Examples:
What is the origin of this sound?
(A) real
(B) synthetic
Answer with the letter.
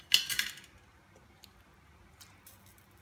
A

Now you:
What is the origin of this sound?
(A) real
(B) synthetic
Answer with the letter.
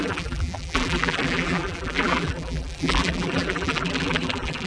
B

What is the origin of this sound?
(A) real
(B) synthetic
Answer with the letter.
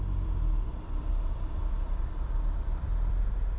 B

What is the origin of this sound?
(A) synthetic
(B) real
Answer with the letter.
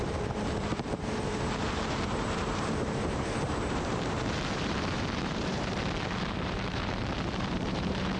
A